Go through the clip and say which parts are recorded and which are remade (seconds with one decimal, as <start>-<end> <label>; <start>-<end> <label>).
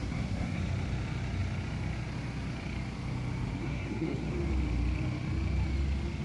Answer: 0.0-0.6 remade; 0.6-3.6 recorded; 3.6-4.3 remade; 4.3-6.2 recorded